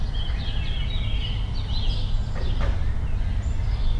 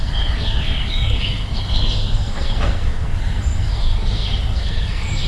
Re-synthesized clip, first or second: second